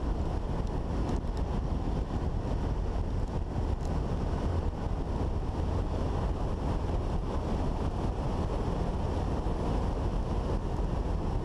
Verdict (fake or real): real